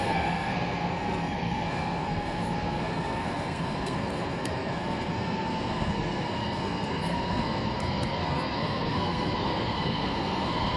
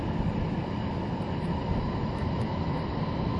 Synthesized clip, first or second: first